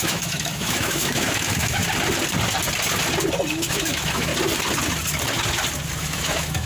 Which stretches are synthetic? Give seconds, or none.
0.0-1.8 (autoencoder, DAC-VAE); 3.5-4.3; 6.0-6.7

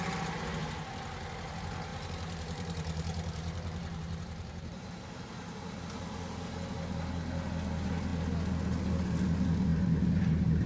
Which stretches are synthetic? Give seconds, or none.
1.9-4.8 (vocoder, BigVGAN v2); 9.7-10.7